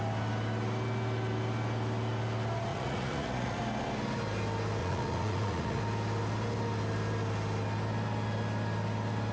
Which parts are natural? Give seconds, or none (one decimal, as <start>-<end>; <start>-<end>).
0.0-2.7; 3.6-4.8; 5.8-9.3

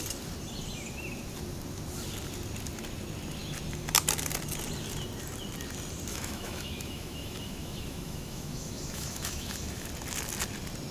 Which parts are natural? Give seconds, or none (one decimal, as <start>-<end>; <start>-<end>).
0.0-6.1; 9.9-10.9

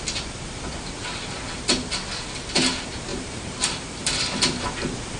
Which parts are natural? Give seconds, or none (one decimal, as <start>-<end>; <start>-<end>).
0.0-3.1; 3.7-5.2

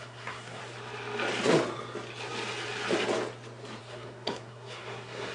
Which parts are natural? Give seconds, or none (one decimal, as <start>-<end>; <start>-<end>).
0.6-3.8

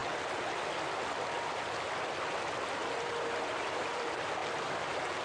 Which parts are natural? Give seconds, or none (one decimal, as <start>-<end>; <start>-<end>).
0.0-2.8; 4.0-4.4